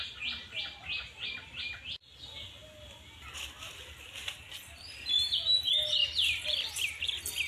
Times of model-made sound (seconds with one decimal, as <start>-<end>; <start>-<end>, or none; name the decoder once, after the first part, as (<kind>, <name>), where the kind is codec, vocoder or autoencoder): none